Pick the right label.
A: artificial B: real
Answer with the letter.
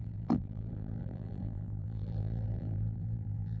A